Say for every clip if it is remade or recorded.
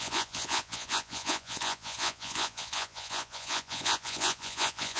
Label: remade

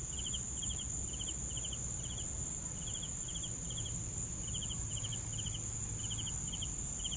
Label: recorded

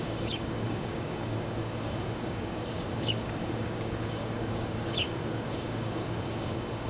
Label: remade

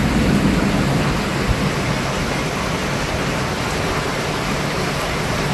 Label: recorded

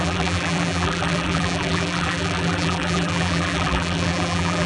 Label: remade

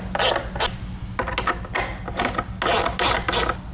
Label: recorded